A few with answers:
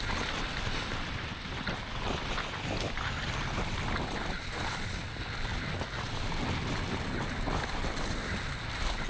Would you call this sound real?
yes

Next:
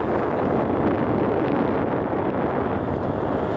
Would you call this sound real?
yes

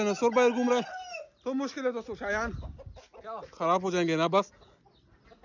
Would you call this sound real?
yes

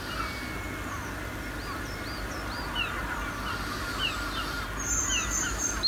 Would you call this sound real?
yes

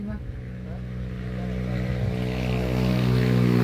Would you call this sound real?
yes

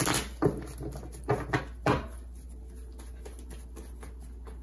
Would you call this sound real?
yes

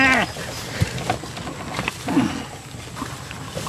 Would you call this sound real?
yes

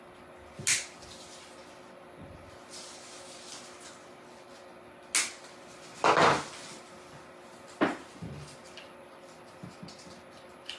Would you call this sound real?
yes